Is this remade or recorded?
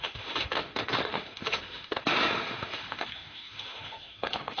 remade